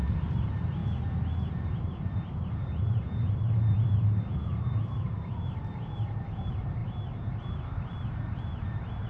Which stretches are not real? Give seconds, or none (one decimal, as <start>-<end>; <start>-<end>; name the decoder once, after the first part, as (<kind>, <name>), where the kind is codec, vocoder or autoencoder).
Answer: 0.0-0.8 (vocoder, BigVGAN v2); 1.5-6.8; 7.7-9.1